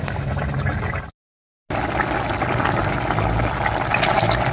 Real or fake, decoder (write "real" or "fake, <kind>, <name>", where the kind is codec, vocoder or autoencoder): real